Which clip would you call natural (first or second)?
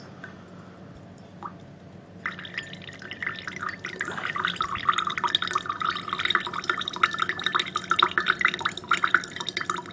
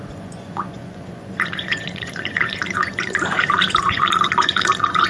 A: first